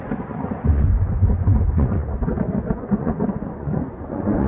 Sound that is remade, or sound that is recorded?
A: remade